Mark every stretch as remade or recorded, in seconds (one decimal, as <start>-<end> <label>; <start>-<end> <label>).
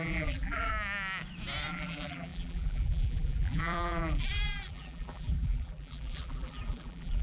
0.0-0.7 remade; 0.7-1.7 recorded; 1.7-7.2 remade